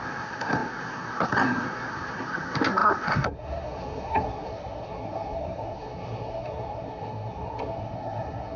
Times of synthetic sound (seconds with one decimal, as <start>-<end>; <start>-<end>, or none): 0.0-8.6